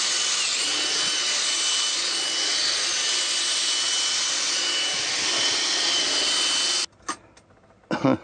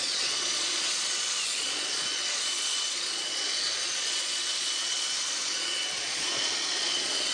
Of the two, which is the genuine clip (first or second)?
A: first